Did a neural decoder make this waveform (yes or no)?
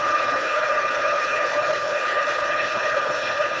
yes